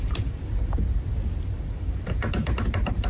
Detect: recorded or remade recorded